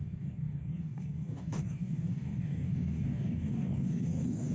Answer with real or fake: fake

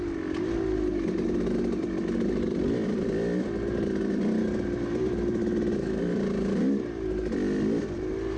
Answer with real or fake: real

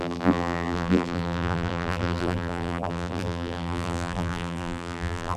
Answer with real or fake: fake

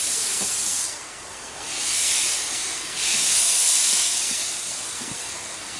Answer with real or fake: fake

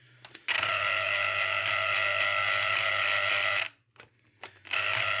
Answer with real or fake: real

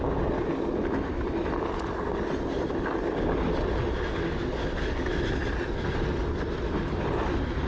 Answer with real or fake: real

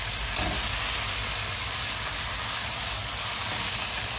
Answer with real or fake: real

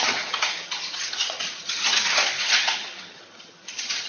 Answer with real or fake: fake